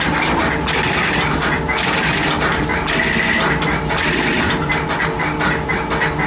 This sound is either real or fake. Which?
real